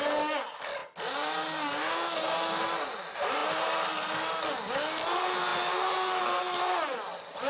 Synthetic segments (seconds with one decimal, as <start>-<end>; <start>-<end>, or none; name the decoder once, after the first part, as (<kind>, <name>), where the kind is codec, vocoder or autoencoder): none